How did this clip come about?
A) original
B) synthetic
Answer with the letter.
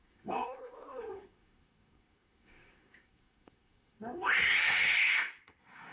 B